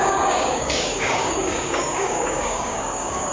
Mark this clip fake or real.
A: fake